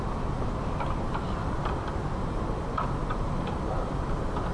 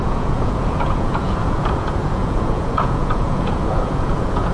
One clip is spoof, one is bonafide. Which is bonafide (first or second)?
first